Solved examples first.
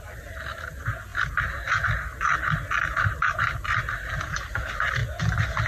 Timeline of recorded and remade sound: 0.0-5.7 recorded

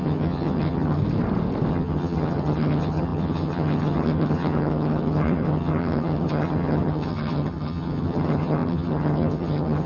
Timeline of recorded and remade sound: 0.0-1.0 remade; 1.0-1.7 recorded; 1.7-9.9 remade

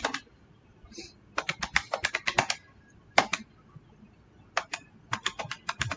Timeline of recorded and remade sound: 0.0-1.0 remade; 1.0-2.1 recorded; 2.1-3.3 remade; 3.3-3.8 recorded; 3.8-4.7 remade; 4.7-5.4 recorded; 5.4-6.0 remade

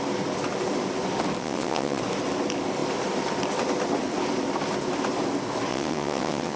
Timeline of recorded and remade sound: 0.0-1.4 recorded; 1.4-2.0 remade; 2.0-5.7 recorded; 5.7-6.6 remade

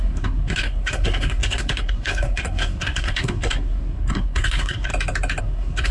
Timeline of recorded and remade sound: 0.0-4.9 remade; 4.9-5.4 recorded; 5.4-5.9 remade

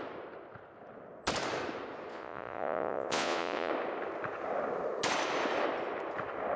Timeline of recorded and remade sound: 0.0-2.1 recorded; 2.1-3.7 remade; 3.7-6.6 recorded

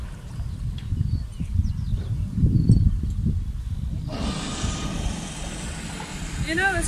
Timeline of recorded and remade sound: 0.0-2.0 recorded; 2.0-2.8 remade; 2.8-6.9 recorded